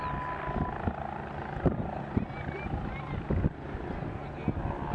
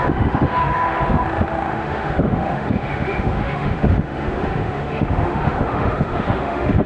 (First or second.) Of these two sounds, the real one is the first